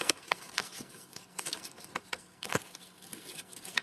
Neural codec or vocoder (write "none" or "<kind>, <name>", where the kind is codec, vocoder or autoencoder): codec, SNAC